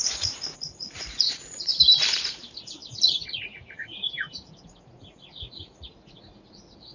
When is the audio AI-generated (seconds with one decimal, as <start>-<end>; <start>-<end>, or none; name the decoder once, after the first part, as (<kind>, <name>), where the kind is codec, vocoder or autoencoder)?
0.0-1.7 (vocoder, Vocos); 2.3-6.9